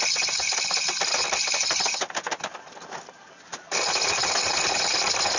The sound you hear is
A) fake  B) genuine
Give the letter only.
B